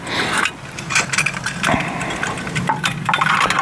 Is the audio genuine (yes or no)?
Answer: yes